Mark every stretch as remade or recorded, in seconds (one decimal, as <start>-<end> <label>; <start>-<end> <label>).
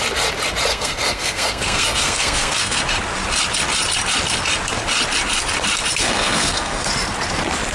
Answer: 0.0-0.7 recorded; 0.7-2.8 remade; 2.8-6.0 recorded; 6.0-6.9 remade; 6.9-7.7 recorded